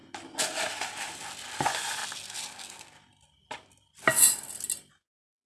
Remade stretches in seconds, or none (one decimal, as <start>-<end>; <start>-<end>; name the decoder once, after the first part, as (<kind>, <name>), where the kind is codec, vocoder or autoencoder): 1.6-2.0 (vocoder, Vocos); 4.9-5.5